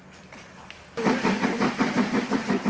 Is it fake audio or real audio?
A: real